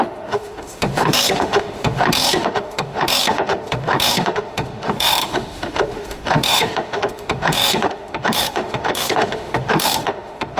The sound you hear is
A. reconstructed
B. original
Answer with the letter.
A